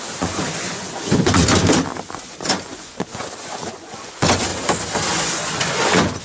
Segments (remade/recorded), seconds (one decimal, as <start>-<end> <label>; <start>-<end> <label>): 0.0-1.4 remade; 1.4-2.1 recorded; 2.1-4.5 remade; 4.5-5.1 recorded; 5.1-6.2 remade